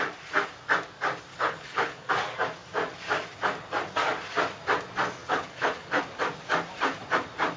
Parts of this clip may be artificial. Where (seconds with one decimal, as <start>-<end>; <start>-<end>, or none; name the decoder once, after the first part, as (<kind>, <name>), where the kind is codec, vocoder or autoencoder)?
1.3-2.1 (codec, HILCodec); 5.2-6.0